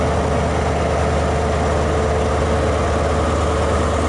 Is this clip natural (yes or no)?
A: yes